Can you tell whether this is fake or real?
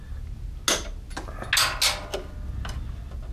real